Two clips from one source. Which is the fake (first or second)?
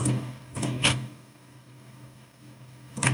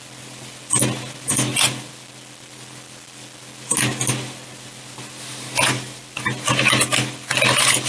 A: first